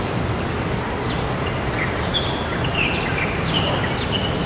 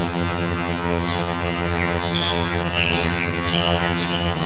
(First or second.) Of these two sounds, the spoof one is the second